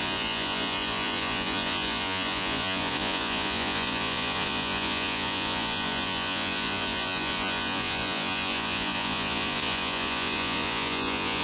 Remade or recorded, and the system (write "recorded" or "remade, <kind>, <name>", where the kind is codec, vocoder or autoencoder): remade, vocoder, Vocos